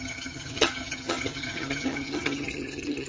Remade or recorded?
remade